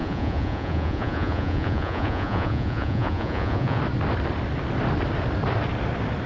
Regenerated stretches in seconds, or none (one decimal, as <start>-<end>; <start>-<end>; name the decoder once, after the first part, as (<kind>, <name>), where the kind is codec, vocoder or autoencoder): 0.0-3.8 (vocoder, Vocos)